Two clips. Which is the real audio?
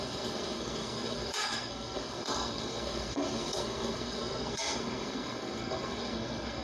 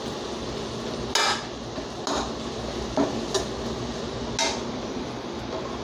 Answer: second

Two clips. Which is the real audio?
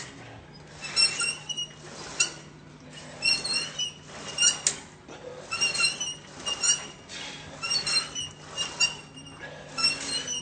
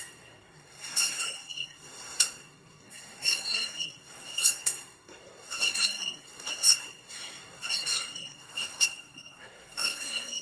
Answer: first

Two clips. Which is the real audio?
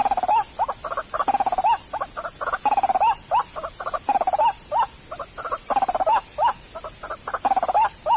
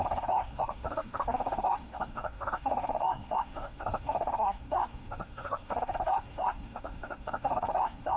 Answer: first